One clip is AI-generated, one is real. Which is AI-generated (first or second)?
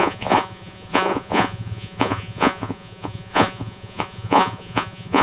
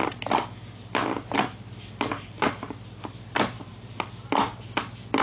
first